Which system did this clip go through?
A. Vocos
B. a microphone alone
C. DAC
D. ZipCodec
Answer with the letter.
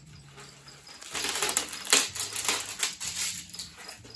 B